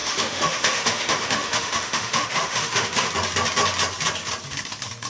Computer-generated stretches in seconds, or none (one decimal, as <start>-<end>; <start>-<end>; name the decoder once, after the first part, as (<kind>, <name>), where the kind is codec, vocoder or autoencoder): 0.0-3.1 (autoencoder, DAC-VAE)